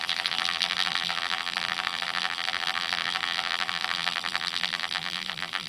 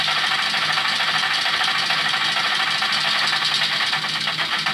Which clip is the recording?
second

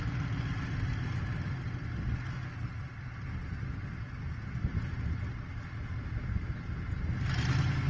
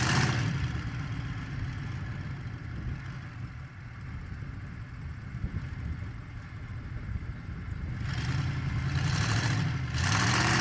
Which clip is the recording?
first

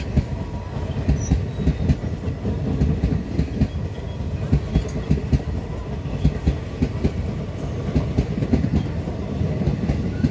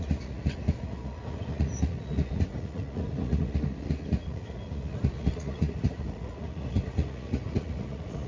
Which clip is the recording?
first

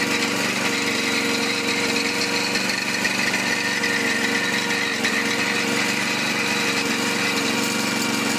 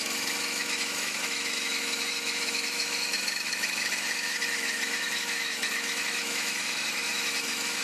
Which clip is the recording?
first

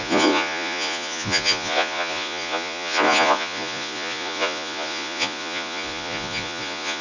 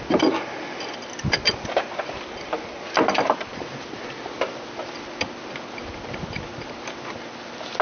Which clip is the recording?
second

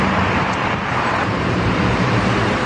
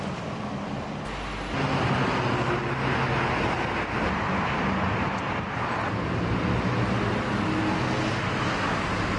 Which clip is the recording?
second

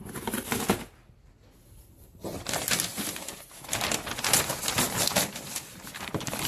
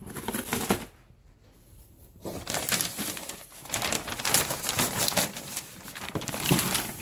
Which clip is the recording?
first